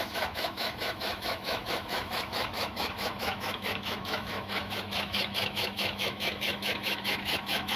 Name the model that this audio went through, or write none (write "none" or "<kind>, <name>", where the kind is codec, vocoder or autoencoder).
autoencoder, DAC-VAE